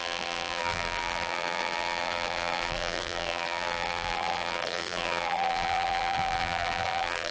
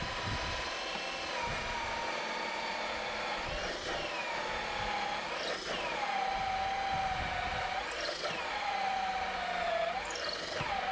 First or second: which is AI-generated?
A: first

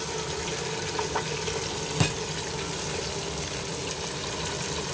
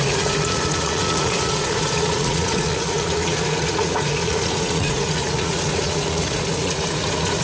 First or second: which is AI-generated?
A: second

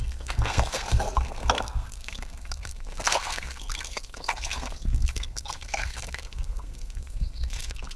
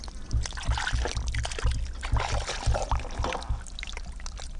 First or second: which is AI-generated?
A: first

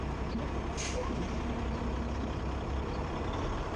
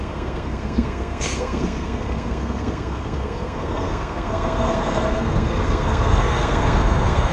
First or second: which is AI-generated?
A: second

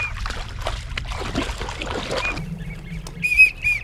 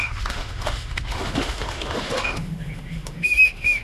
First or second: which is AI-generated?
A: second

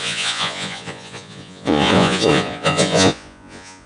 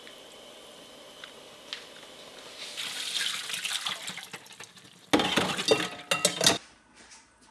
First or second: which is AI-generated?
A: first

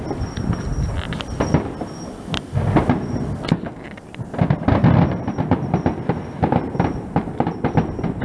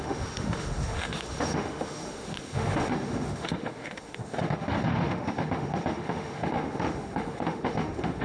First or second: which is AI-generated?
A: second